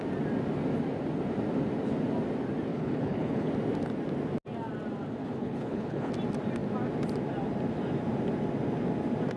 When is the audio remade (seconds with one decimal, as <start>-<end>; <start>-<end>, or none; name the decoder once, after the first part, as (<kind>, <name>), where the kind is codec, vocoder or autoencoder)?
2.7-3.5 (codec, HILCodec); 5.2-6.1